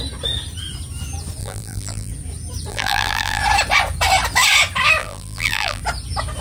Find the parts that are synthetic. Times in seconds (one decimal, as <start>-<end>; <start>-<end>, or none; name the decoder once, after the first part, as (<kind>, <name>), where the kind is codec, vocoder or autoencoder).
1.4-2.1 (vocoder, BigVGAN v2); 2.7-3.4; 5.0-5.8